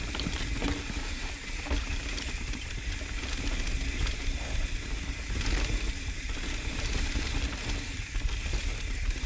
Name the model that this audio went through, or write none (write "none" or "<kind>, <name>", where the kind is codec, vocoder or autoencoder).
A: none